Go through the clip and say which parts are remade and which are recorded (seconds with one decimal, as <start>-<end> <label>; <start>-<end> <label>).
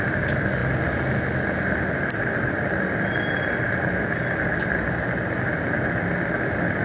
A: 0.0-6.8 recorded